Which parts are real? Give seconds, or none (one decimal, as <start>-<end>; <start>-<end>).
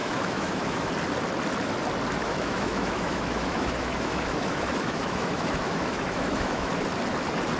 0.9-2.2; 6.7-7.6